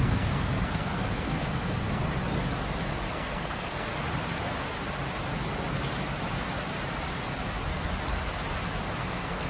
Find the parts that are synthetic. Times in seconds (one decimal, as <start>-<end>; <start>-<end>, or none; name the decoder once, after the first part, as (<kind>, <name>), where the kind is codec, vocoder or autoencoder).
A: 0.0-2.0 (codec, SNAC); 3.1-3.9; 9.0-9.5